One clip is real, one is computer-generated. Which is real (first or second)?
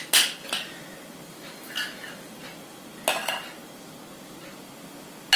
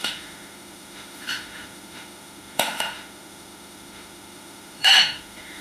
first